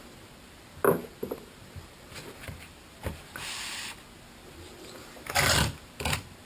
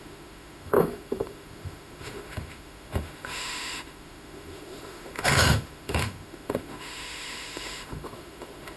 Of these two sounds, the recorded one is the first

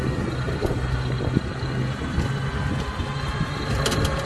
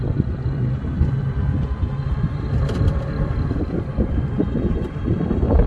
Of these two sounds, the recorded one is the first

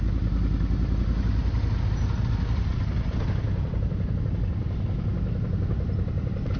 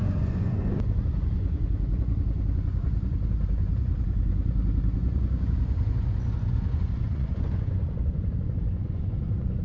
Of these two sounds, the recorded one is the first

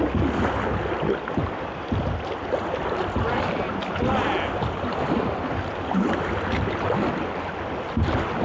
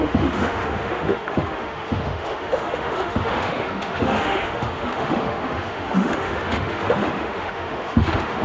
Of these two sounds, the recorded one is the first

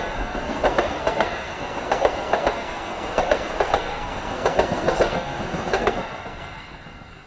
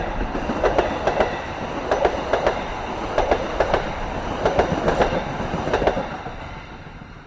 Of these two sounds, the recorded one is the second